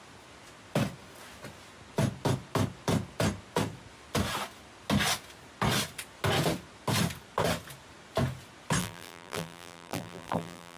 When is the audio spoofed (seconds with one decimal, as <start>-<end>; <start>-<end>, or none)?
8.8-10.8